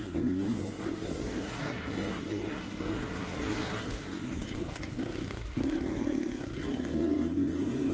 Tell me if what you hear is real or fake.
fake